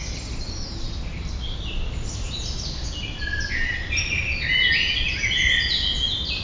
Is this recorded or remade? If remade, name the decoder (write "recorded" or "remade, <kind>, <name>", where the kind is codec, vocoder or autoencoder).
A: recorded